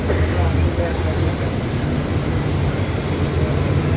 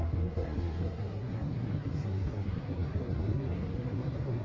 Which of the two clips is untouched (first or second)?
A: first